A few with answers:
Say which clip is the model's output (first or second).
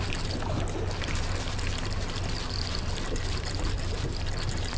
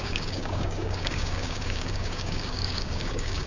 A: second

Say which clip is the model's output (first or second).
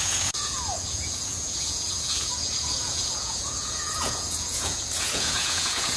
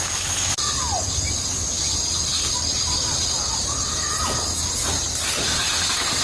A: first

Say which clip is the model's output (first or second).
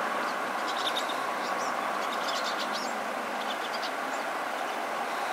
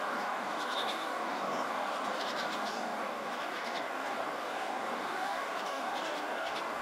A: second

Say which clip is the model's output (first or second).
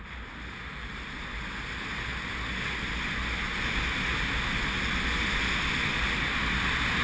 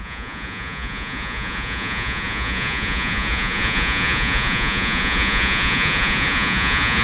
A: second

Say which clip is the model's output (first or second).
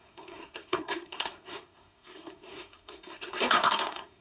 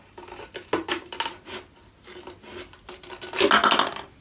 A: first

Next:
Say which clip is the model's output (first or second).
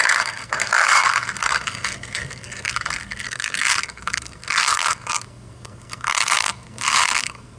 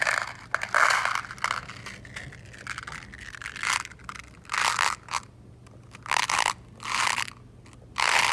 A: first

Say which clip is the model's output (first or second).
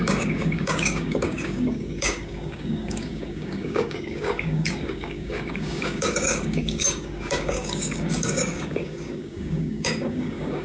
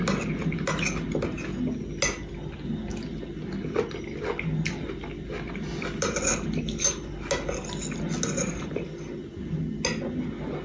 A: first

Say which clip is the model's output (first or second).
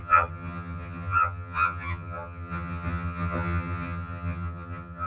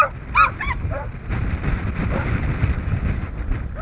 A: first